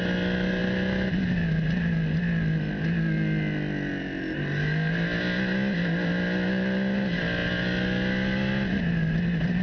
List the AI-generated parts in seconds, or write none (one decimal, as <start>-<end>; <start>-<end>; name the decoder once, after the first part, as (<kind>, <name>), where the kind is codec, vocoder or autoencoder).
none